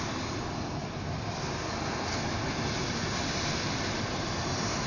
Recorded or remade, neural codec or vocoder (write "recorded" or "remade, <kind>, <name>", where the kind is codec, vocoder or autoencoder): recorded